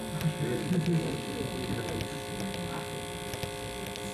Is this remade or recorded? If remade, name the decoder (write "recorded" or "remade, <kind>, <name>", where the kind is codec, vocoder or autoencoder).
recorded